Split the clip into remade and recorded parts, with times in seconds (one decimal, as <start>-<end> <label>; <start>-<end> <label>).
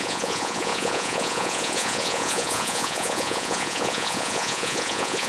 0.0-5.3 remade